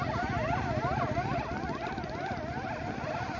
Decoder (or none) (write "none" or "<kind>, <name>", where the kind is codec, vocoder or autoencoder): none